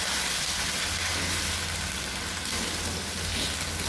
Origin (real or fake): real